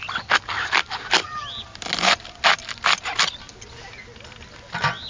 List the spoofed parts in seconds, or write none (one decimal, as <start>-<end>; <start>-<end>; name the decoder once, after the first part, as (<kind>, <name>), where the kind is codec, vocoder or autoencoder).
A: none